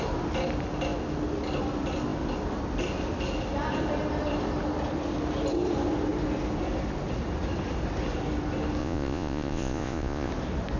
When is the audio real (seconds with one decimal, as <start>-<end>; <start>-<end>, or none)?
0.0-8.8; 10.3-10.8